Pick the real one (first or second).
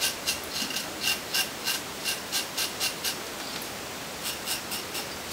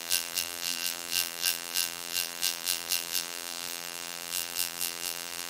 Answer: first